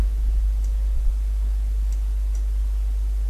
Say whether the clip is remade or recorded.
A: remade